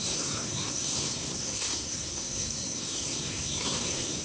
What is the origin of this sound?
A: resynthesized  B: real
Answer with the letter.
A